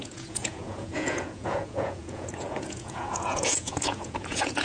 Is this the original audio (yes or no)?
no